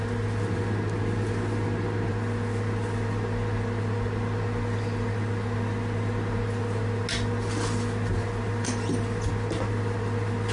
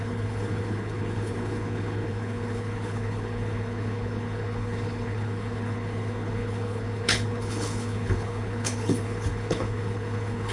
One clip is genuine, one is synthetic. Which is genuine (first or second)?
first